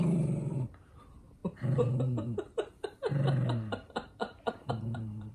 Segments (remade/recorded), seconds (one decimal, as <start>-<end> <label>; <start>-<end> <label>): 0.0-5.3 remade